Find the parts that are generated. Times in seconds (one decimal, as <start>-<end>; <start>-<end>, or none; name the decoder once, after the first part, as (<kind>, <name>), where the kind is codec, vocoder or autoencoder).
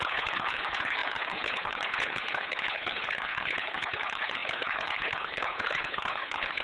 0.0-6.6 (codec, HILCodec)